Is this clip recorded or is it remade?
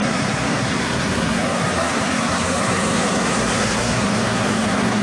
remade